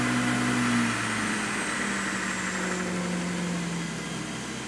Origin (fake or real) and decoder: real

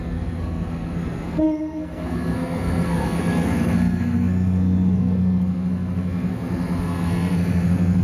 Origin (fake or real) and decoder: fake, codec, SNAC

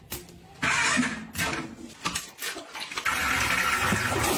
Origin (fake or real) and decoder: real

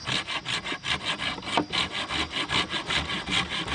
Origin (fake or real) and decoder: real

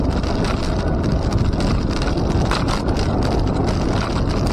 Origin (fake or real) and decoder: real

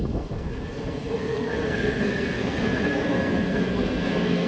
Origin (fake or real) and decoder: fake, codec, SNAC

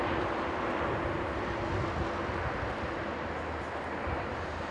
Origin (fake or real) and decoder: real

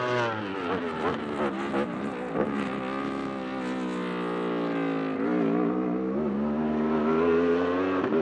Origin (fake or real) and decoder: real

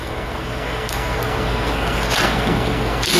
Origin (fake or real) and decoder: fake, codec, SNAC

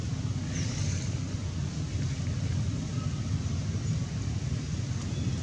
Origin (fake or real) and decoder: real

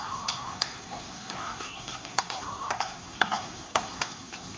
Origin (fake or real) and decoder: fake, codec, SNAC